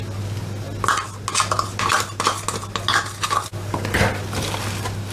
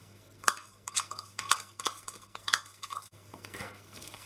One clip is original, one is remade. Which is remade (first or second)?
second